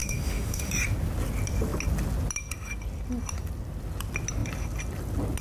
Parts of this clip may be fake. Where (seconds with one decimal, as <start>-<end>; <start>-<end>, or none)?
0.0-0.7